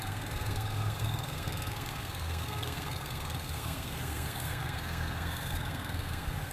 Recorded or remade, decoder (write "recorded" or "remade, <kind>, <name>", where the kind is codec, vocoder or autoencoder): remade, codec, SNAC